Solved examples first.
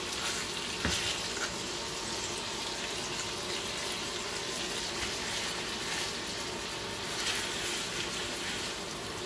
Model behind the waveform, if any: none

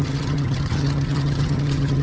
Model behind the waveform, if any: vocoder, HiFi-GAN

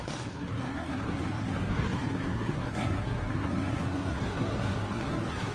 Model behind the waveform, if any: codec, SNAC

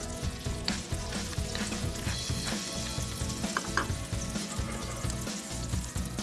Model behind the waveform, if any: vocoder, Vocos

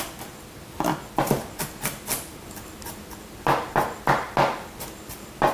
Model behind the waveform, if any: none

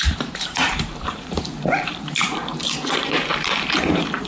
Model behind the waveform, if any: vocoder, BigVGAN v2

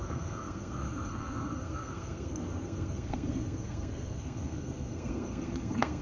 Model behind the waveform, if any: codec, SNAC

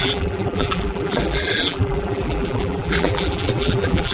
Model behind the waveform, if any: vocoder, BigVGAN v2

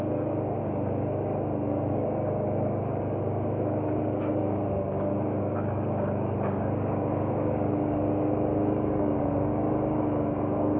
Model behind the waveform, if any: codec, DAC